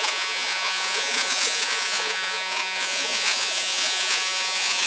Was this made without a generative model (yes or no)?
no